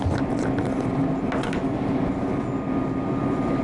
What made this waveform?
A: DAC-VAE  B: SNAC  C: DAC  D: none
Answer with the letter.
D